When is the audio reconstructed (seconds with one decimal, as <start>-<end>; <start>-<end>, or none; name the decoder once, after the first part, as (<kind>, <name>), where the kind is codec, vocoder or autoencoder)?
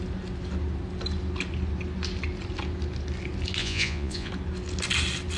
3.6-4.3 (vocoder, Vocos)